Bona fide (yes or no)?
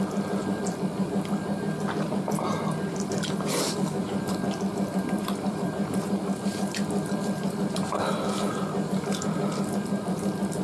no